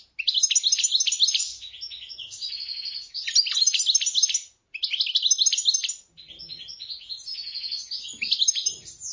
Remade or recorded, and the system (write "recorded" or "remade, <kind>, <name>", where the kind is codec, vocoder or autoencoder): recorded